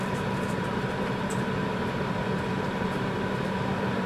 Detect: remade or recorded remade